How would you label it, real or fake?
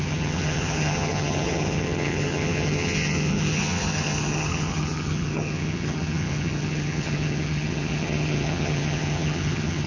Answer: fake